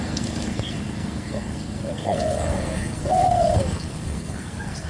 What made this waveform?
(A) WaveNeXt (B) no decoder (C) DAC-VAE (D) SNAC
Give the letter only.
D